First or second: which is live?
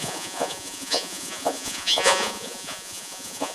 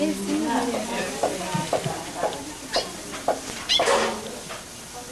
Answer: second